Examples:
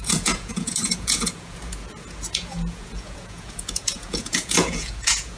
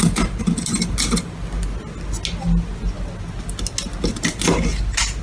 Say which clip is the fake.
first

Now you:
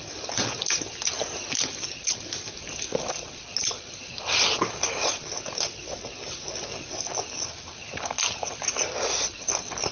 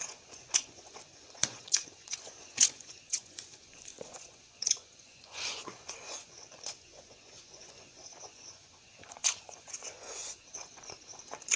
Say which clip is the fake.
second